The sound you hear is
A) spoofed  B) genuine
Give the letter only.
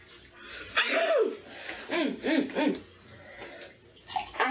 B